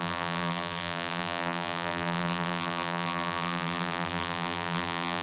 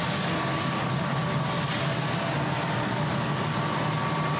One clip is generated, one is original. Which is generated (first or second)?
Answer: first